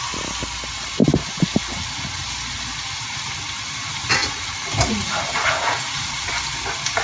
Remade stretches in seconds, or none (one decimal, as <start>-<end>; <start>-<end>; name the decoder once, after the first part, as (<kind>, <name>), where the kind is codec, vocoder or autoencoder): 4.2-6.3 (vocoder, Vocos)